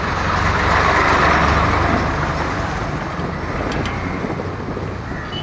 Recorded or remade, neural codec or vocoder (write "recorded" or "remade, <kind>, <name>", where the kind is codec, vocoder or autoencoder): recorded